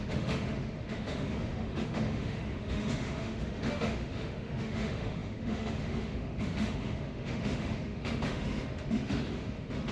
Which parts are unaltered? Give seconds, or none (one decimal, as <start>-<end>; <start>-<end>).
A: none